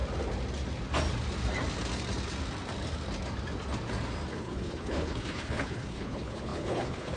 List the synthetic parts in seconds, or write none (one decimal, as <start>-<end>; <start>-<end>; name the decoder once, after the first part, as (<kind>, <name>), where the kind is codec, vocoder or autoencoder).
4.3-7.2 (codec, HILCodec)